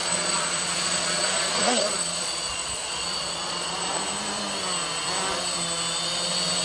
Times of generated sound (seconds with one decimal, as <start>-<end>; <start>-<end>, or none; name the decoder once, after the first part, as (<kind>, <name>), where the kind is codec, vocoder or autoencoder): 0.0-4.0 (vocoder, Vocos)